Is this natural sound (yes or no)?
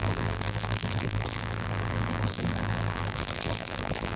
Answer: no